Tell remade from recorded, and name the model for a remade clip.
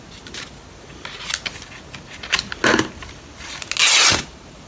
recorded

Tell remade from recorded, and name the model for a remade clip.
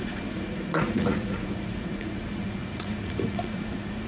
remade, vocoder, Vocos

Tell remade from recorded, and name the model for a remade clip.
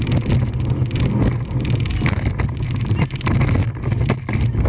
recorded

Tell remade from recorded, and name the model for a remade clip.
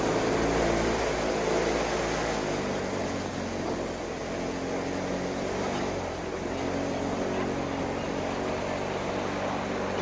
recorded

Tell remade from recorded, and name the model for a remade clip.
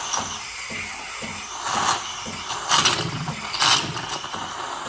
recorded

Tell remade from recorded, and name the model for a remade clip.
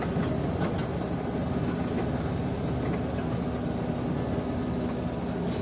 recorded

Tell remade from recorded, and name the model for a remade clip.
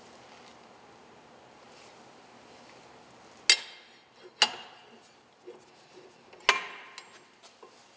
recorded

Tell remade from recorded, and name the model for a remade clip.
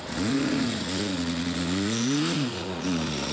remade, vocoder, Vocos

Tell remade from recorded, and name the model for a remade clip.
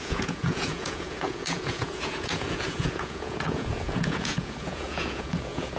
remade, vocoder, Vocos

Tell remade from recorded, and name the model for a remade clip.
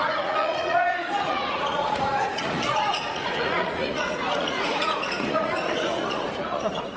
remade, vocoder, Vocos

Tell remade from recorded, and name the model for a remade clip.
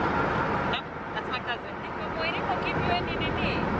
recorded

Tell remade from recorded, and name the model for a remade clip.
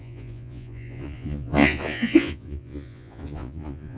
remade, vocoder, Vocos